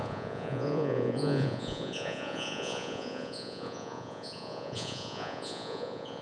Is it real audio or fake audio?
fake